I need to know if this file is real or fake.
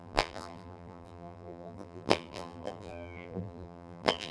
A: fake